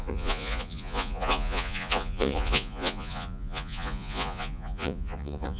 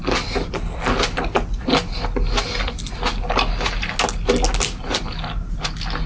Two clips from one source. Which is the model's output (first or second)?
first